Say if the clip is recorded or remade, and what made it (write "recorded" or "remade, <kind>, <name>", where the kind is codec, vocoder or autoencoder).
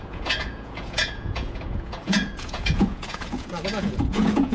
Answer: remade, vocoder, Vocos